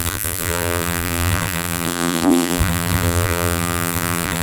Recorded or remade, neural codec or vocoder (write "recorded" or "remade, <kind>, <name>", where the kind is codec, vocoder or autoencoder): remade, vocoder, BigVGAN v2